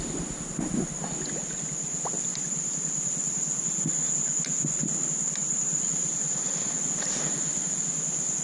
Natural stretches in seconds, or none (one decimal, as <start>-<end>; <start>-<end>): 0.0-2.3; 3.0-6.0; 6.7-8.4